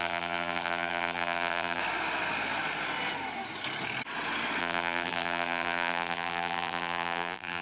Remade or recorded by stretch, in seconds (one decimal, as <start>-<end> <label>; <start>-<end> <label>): 0.0-1.8 remade; 1.8-4.6 recorded; 4.6-7.6 remade